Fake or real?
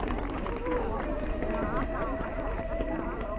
fake